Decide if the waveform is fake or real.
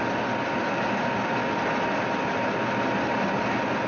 real